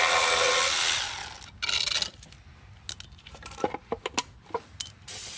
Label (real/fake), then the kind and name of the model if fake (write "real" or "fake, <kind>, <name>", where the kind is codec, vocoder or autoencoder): real